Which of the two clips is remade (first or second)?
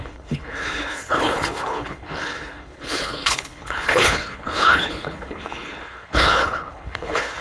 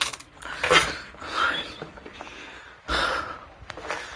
first